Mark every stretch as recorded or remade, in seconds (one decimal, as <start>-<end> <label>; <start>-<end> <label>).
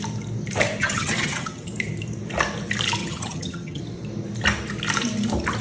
0.0-0.8 recorded; 0.8-1.7 remade; 1.7-3.0 recorded; 3.0-3.8 remade; 3.8-5.6 recorded